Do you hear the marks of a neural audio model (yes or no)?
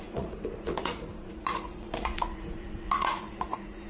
yes